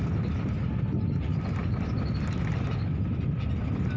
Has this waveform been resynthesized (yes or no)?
no